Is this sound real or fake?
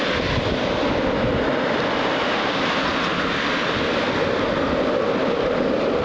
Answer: real